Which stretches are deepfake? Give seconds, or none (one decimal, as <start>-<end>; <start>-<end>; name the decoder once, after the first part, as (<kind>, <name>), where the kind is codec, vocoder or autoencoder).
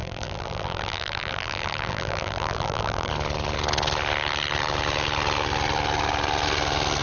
0.0-3.1 (vocoder, BigVGAN v2)